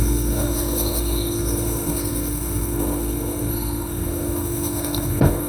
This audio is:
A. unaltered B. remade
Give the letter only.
B